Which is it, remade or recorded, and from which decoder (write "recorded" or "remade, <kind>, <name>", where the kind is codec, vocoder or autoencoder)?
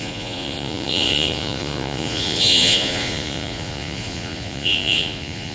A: remade, vocoder, Vocos